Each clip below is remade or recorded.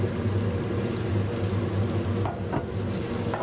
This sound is recorded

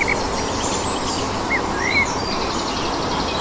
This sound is recorded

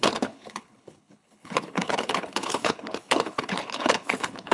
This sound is remade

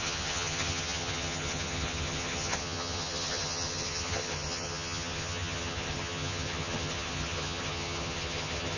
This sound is remade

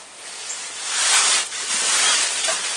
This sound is remade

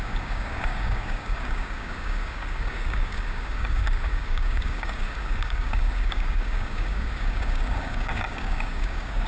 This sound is remade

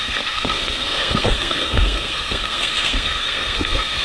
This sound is remade